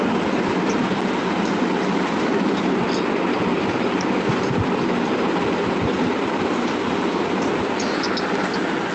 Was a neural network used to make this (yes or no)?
no